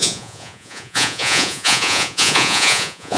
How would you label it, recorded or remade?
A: remade